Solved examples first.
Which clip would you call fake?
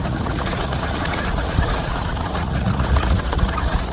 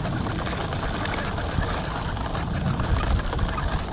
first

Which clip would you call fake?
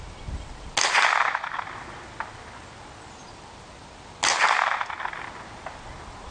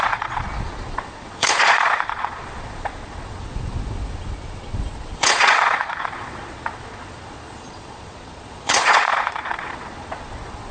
second